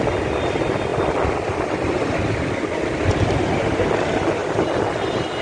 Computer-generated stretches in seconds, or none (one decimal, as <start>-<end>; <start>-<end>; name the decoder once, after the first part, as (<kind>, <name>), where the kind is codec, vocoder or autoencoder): none